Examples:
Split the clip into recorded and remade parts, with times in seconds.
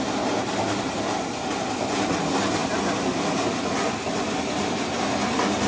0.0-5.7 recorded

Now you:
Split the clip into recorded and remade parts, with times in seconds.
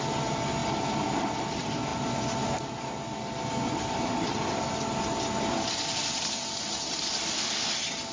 0.0-8.1 recorded